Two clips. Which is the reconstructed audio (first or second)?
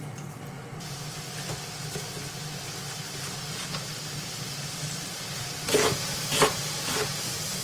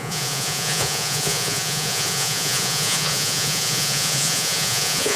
second